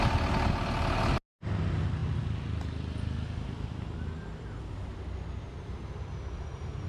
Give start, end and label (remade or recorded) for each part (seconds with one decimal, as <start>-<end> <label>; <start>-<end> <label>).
0.0-6.9 recorded

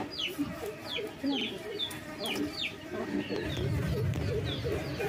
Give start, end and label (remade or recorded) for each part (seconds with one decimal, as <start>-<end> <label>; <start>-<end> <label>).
0.0-5.1 recorded

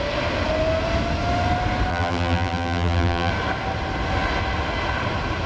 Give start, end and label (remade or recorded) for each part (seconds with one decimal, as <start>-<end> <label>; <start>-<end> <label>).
0.0-1.9 recorded; 1.9-3.3 remade; 3.3-5.5 recorded